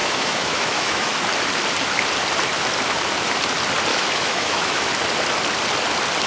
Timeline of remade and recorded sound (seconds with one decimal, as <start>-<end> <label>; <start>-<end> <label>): 0.0-1.2 remade; 1.2-3.9 recorded; 3.9-4.9 remade; 4.9-6.3 recorded